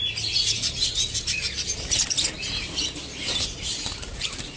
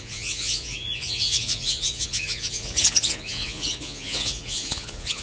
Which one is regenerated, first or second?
second